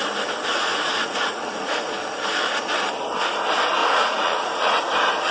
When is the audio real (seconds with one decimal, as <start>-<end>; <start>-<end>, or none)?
0.0-0.5; 1.9-3.8; 4.8-5.3